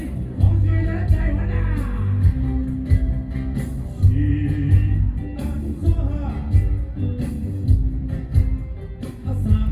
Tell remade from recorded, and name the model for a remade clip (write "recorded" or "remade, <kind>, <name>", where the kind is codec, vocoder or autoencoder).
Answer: recorded